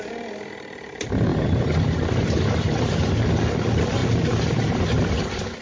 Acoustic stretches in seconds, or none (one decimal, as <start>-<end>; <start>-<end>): 0.0-1.3; 3.3-4.0; 5.0-5.6